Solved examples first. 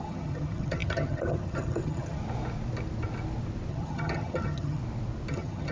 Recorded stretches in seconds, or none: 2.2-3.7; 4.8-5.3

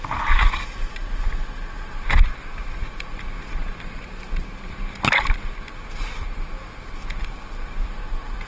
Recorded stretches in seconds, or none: 0.0-8.5

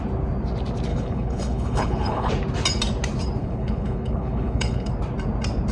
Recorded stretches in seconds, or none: 0.0-0.9; 2.3-3.4; 4.9-5.7

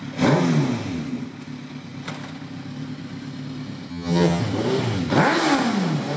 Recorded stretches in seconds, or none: 0.0-3.9; 4.4-6.2

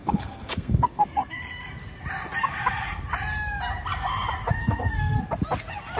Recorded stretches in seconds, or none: 1.4-4.6; 5.2-6.0